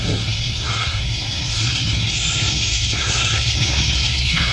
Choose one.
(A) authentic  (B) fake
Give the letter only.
B